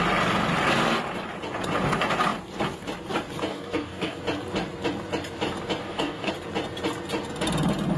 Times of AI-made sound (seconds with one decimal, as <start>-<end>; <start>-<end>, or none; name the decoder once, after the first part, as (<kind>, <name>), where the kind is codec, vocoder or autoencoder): 3.5-4.2 (codec, DAC); 5.8-6.3